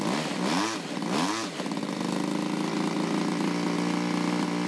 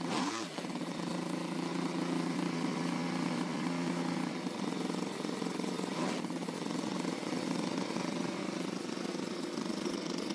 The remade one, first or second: second